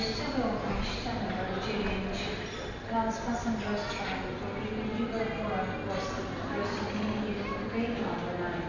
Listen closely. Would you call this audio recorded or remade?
recorded